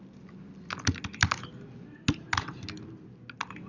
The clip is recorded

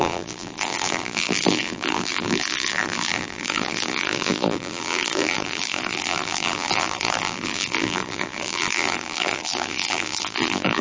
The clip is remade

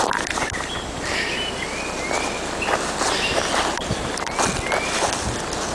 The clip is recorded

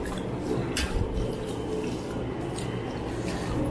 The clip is recorded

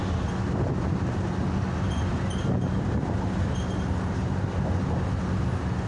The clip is recorded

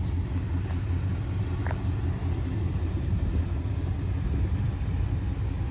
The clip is recorded